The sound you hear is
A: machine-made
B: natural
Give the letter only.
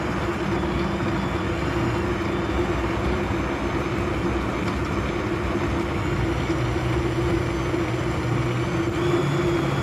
B